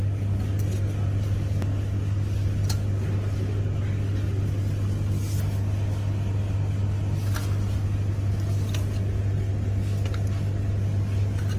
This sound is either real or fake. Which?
real